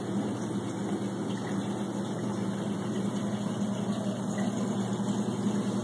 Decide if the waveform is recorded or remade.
recorded